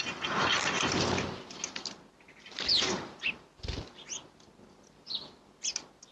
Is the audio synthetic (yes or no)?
no